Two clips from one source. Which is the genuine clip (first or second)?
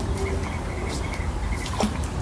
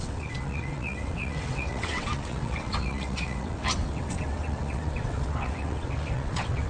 first